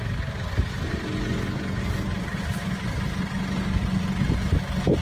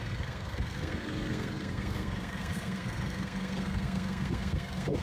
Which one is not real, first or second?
second